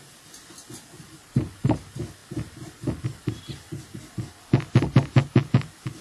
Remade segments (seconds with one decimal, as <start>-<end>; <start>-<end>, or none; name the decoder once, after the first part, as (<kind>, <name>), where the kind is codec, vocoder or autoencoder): none